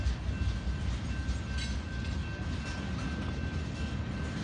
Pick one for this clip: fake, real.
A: real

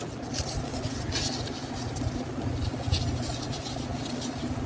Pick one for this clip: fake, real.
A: real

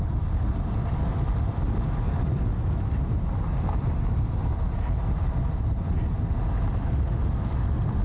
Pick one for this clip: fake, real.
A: real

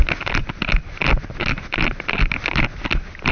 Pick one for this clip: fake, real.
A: real